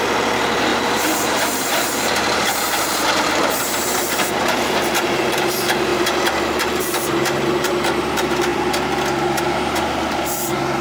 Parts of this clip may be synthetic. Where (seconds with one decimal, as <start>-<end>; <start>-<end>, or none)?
0.0-10.8